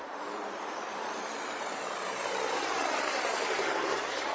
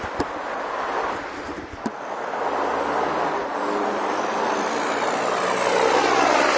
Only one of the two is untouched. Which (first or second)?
second